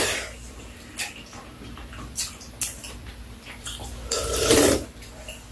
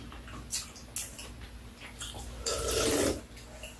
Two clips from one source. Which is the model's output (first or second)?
first